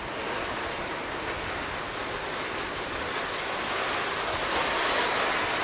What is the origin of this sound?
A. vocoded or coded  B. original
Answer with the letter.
B